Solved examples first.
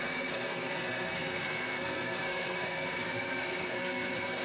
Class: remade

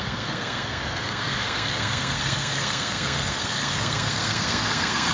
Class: remade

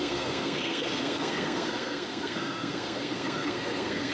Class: remade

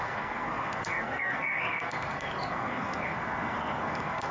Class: remade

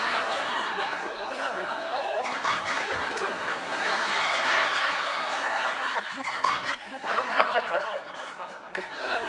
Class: remade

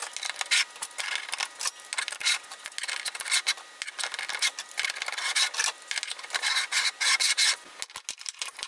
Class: recorded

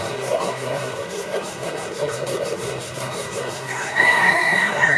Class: remade